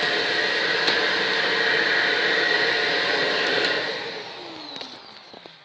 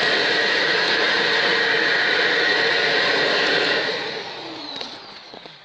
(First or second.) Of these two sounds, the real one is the first